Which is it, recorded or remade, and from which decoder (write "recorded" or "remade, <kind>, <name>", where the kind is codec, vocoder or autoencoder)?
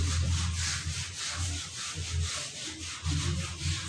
recorded